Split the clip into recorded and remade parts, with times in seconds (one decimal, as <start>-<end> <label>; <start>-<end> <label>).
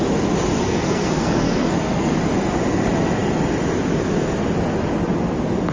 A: 0.0-0.6 recorded; 0.6-2.1 remade; 2.1-5.7 recorded